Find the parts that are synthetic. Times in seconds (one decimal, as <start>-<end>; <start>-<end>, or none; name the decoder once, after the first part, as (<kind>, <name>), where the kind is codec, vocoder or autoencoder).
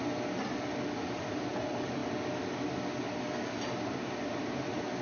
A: none